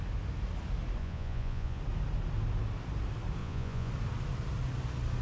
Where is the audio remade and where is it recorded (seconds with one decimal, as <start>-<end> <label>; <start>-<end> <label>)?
0.0-1.0 recorded; 1.0-1.8 remade; 1.8-3.4 recorded; 3.4-3.9 remade; 3.9-5.2 recorded